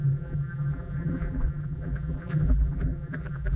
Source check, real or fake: fake